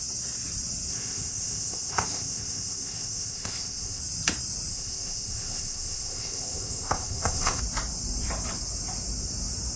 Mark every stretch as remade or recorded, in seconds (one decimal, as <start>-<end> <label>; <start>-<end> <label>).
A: 0.0-0.9 recorded; 0.9-4.0 remade; 4.0-4.7 recorded; 4.7-7.6 remade; 7.6-9.8 recorded